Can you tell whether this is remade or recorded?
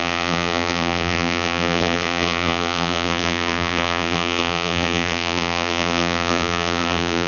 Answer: remade